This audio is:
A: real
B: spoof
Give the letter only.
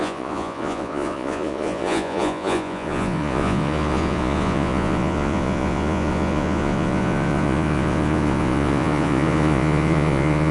B